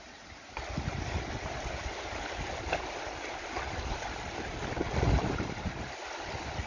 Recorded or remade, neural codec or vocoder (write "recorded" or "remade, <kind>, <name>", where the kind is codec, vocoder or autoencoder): recorded